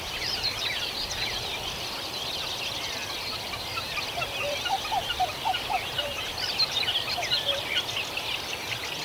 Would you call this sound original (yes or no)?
no